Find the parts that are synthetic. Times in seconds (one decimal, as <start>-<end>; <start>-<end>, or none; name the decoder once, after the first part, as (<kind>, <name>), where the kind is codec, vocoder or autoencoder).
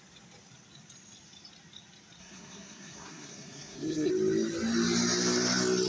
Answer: 2.2-4.1 (codec, SNAC)